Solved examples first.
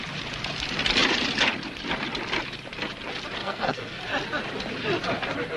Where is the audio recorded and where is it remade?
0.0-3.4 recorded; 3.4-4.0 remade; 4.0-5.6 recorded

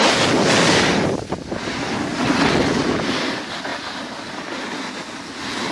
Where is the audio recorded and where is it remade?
0.0-5.7 recorded

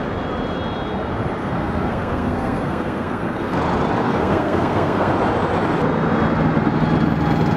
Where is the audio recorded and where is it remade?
0.0-1.4 recorded; 1.4-3.6 remade; 3.6-4.0 recorded; 4.0-5.1 remade; 5.1-7.6 recorded

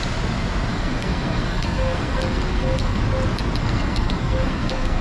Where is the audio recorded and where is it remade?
0.0-0.7 recorded; 0.7-3.0 remade; 3.0-3.6 recorded; 3.6-5.0 remade

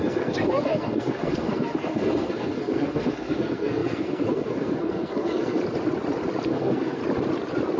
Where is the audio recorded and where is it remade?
0.0-5.6 remade; 5.6-6.5 recorded; 6.5-7.0 remade; 7.0-7.8 recorded

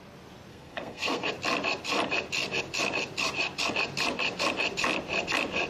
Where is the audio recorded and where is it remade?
0.0-0.5 recorded; 0.5-1.3 remade; 1.3-5.7 recorded